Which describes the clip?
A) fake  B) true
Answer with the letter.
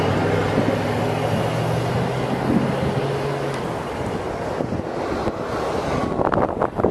B